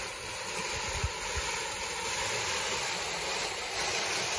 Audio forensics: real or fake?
real